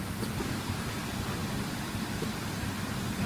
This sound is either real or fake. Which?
real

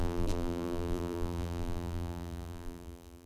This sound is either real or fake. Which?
fake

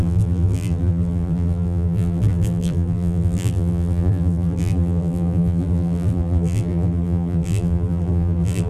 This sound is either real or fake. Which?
fake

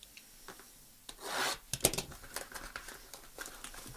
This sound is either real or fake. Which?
real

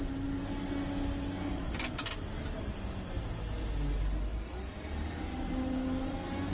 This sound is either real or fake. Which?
real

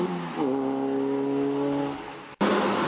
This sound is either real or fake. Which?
real